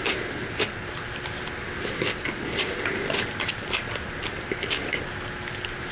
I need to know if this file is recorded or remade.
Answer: recorded